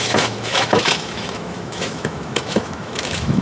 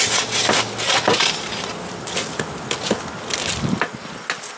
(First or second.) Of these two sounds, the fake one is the first